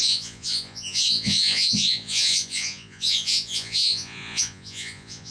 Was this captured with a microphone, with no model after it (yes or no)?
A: no